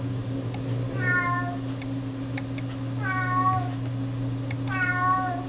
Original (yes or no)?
yes